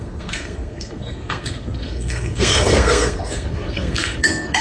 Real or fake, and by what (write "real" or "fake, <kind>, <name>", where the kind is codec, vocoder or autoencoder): fake, codec, SNAC